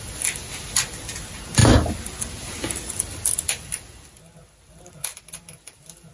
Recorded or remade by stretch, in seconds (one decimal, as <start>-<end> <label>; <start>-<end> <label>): 0.0-6.1 recorded